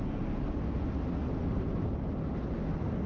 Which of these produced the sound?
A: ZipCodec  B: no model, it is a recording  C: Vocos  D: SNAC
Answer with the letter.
B